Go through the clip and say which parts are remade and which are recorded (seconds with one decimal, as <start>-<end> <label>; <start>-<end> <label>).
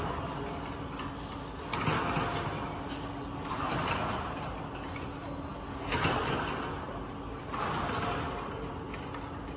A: 0.0-9.6 recorded